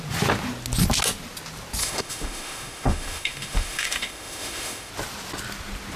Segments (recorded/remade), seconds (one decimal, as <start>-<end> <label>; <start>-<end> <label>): 0.0-1.8 recorded; 1.8-4.9 remade; 4.9-6.0 recorded